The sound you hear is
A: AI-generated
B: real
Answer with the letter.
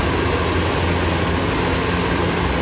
B